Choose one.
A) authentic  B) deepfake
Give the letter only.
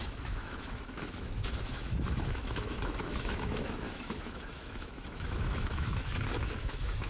B